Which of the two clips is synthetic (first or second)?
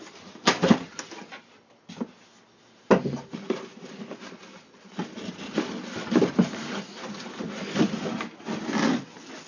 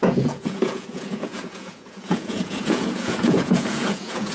second